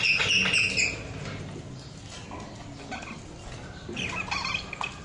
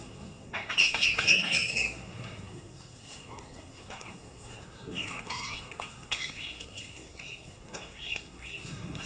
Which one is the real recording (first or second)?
first